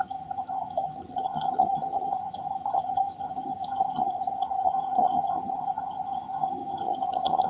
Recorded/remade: remade